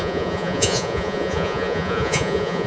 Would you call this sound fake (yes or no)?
yes